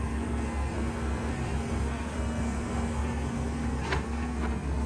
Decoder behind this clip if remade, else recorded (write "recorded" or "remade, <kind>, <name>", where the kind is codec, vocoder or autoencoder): remade, codec, SNAC